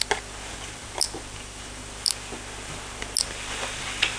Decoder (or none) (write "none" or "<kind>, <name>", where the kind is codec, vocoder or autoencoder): none